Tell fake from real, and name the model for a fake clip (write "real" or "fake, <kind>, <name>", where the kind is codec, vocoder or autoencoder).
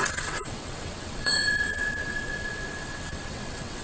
fake, vocoder, WaveNeXt